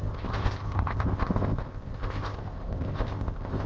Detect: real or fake fake